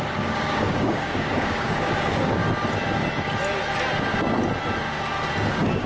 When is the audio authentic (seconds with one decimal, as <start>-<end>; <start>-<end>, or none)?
2.4-5.5